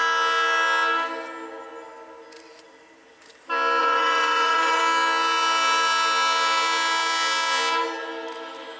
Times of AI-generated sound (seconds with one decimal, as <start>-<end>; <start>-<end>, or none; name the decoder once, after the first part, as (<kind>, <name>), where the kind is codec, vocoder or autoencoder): 3.8-4.8 (vocoder, Vocos)